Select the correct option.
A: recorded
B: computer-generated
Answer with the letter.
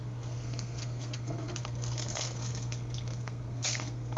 B